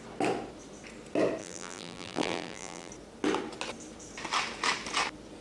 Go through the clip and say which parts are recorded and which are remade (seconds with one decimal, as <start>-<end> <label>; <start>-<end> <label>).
0.0-1.4 recorded; 1.4-2.9 remade; 2.9-5.4 recorded